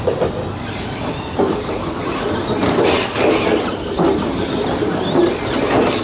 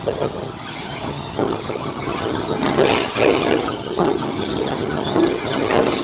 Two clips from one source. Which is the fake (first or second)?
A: second